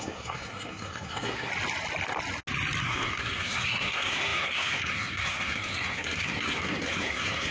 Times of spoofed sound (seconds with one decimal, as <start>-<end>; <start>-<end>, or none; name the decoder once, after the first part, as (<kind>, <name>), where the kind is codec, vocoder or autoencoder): 0.0-1.5 (codec, SNAC); 2.8-7.5